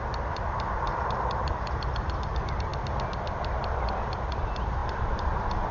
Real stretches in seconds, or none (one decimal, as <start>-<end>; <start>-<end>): 0.9-1.4; 2.7-4.3